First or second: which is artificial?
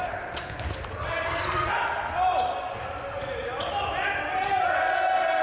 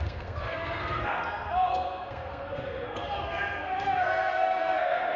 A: second